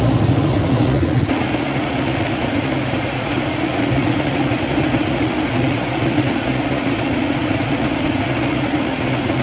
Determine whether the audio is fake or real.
fake